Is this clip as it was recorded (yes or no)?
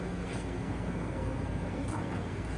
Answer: no